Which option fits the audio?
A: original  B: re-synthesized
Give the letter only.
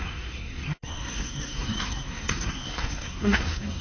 B